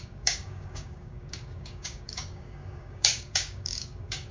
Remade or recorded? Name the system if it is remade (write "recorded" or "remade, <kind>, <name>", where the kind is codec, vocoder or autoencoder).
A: remade, codec, DAC